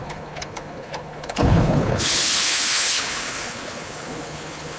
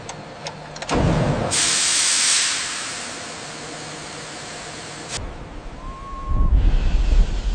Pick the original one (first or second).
second